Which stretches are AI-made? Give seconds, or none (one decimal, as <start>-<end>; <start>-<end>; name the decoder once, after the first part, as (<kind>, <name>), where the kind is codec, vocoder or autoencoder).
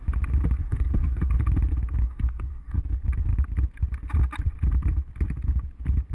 0.6-1.3 (codec, SNAC); 2.0-2.8